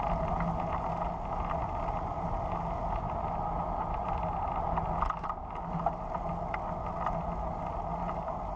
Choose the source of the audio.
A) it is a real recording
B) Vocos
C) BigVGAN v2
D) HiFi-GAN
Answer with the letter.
A